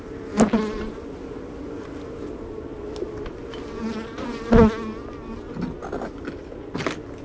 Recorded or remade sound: recorded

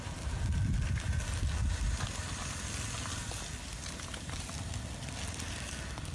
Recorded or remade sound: recorded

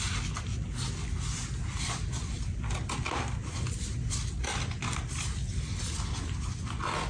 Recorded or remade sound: recorded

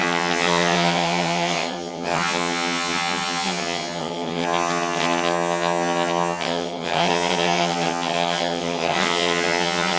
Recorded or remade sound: remade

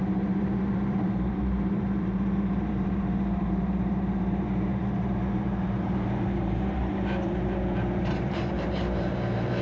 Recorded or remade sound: remade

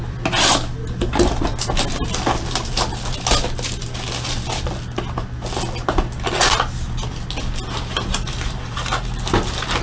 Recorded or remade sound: recorded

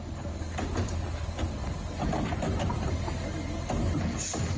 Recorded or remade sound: recorded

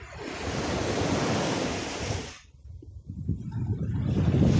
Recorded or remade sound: recorded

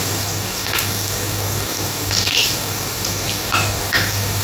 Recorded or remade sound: remade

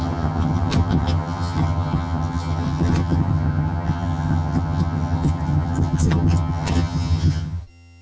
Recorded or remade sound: remade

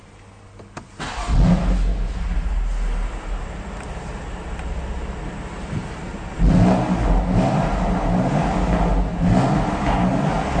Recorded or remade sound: recorded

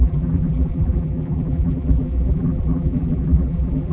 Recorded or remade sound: remade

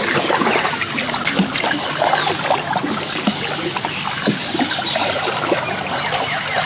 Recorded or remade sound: recorded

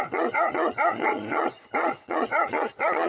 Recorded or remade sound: remade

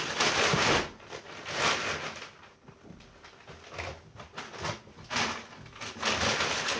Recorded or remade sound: recorded